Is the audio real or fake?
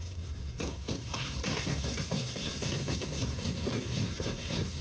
fake